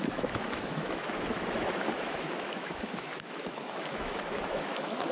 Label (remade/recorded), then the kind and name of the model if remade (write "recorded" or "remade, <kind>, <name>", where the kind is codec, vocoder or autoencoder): remade, autoencoder, DAC-VAE